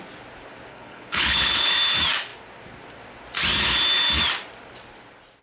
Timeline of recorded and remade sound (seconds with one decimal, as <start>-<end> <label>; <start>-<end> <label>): 0.0-0.7 recorded; 0.7-1.7 remade; 1.7-5.4 recorded